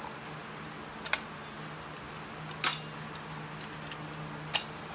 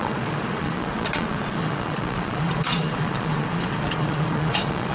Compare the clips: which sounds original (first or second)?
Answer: first